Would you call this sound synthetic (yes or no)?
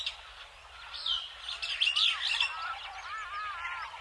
no